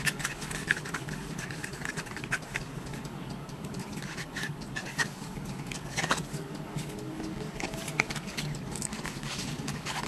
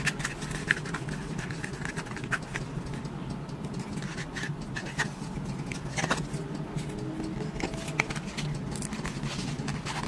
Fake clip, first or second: first